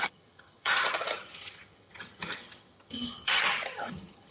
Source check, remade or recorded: remade